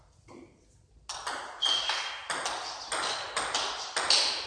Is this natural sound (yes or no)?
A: yes